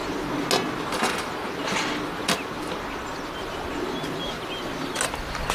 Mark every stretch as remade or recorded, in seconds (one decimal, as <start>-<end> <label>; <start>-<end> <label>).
0.0-5.5 recorded